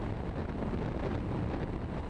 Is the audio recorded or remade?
recorded